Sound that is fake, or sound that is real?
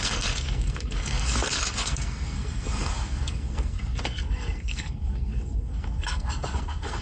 fake